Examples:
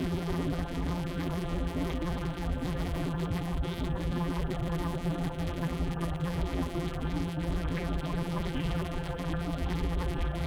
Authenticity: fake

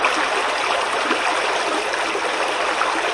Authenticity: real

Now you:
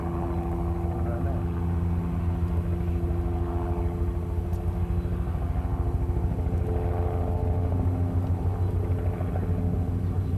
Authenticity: real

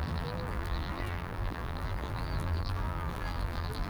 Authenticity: fake